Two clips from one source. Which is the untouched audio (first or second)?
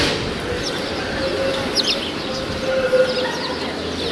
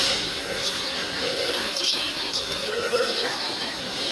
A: first